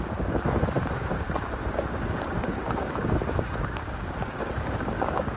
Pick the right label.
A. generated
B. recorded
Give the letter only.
A